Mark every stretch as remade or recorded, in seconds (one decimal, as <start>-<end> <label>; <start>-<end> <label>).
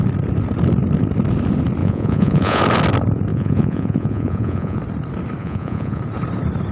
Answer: 0.0-1.8 recorded; 1.8-2.6 remade; 2.6-3.3 recorded; 3.3-4.8 remade; 4.8-5.4 recorded; 5.4-6.0 remade; 6.0-6.7 recorded